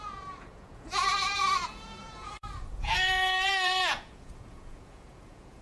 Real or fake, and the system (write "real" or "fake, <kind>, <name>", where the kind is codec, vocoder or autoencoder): fake, vocoder, Vocos